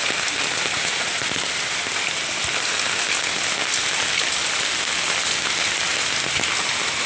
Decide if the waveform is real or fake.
real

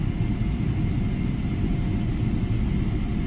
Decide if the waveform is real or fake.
real